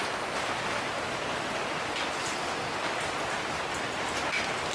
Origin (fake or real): real